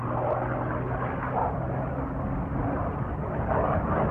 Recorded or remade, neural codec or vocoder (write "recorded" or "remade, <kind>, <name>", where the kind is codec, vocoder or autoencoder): recorded